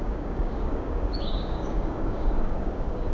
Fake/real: fake